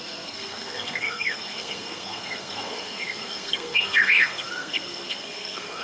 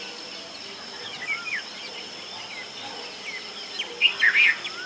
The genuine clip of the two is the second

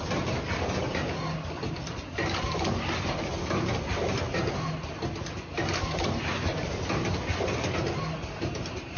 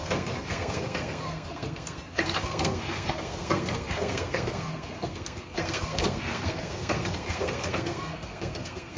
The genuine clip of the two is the first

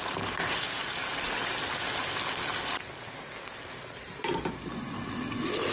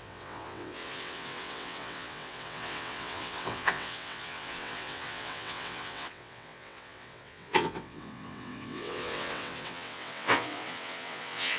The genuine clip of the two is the first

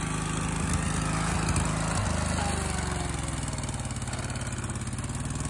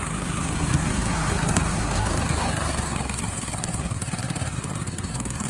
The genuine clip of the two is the first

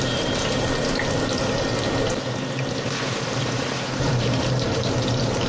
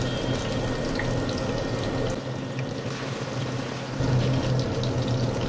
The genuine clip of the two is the second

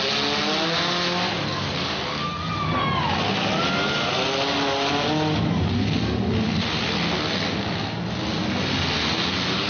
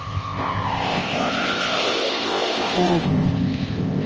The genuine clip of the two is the first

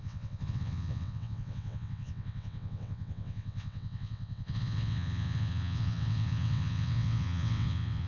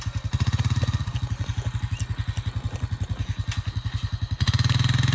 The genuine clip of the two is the second